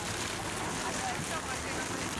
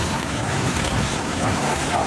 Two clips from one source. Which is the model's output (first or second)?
second